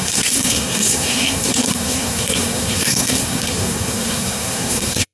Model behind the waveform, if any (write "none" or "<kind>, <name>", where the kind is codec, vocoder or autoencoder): codec, SNAC